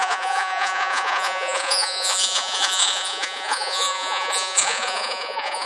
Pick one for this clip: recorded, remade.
remade